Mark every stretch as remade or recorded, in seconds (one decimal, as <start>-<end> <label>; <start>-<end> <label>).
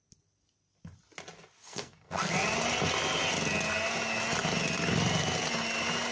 0.0-1.6 recorded; 1.6-2.3 remade; 2.3-6.1 recorded